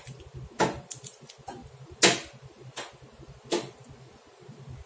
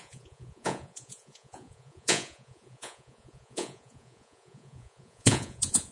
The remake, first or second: second